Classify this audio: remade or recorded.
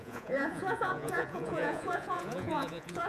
remade